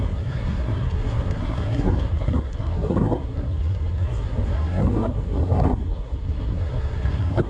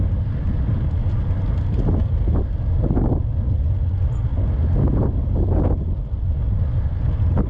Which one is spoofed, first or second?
first